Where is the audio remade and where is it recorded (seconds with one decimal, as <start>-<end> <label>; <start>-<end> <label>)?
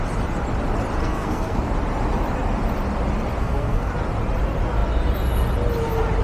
0.0-1.0 recorded; 1.0-1.7 remade; 1.7-3.4 recorded; 3.4-3.9 remade; 3.9-6.2 recorded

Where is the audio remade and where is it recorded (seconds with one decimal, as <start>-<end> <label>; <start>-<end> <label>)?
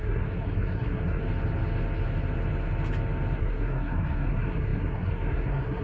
0.0-1.2 remade; 1.2-3.4 recorded; 3.4-5.8 remade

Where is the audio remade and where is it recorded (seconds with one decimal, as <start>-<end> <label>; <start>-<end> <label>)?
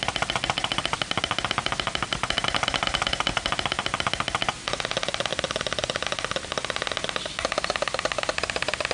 0.0-8.9 recorded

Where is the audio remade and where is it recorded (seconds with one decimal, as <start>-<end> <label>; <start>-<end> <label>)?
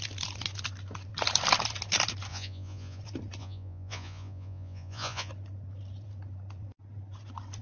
0.0-2.3 recorded; 2.3-3.0 remade; 3.0-3.4 recorded; 3.4-5.3 remade; 5.3-7.6 recorded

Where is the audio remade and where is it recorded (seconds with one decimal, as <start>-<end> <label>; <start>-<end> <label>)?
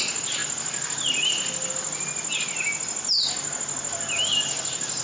0.0-5.0 recorded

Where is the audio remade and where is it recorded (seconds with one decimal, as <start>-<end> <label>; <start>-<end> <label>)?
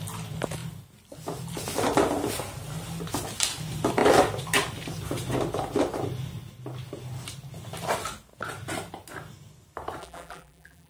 0.0-10.0 recorded; 10.0-10.9 remade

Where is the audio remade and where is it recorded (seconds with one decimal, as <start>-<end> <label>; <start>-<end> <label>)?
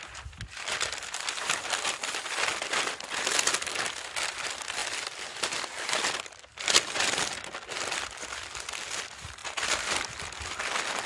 0.0-11.1 recorded